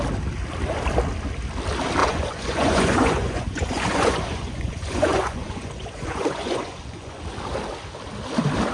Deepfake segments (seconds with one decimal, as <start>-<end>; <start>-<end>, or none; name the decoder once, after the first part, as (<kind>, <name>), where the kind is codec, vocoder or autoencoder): 2.0-7.2 (vocoder, Vocos)